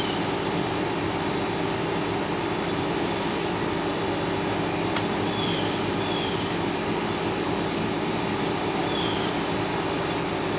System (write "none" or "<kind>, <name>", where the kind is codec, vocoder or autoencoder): vocoder, BigVGAN v2